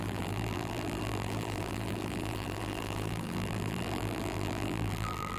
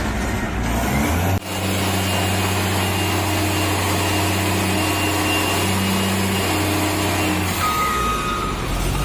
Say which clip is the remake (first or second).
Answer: first